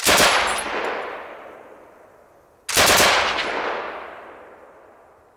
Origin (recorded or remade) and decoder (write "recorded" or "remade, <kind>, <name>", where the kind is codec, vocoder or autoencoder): recorded